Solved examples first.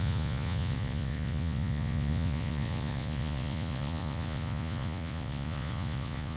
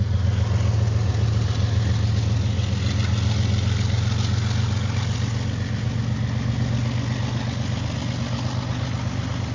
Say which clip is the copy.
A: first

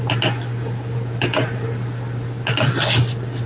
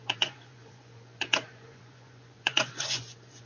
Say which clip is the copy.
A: second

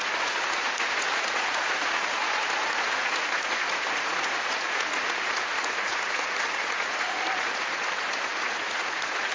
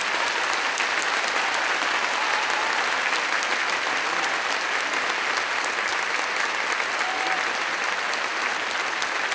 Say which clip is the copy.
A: first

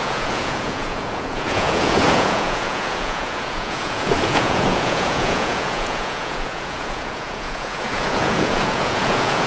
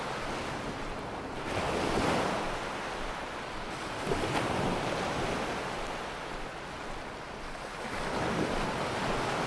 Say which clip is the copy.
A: first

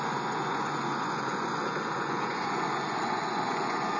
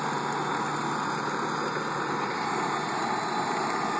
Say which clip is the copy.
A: first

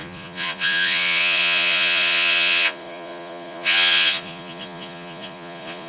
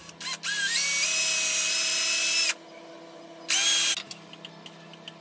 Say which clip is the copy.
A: first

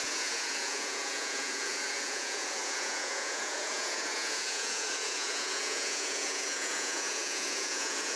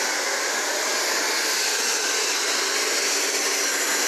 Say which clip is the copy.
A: first